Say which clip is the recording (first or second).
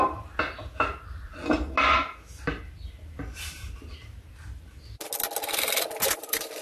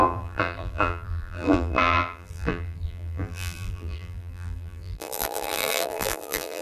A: first